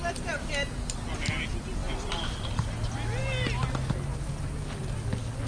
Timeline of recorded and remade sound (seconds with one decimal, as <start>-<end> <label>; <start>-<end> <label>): 0.0-5.5 recorded